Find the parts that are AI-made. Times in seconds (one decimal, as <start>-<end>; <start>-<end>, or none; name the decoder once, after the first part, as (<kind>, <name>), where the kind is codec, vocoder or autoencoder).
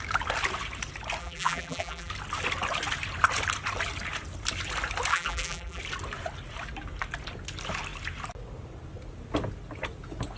1.2-2.1 (vocoder, BigVGAN v2); 5.1-5.8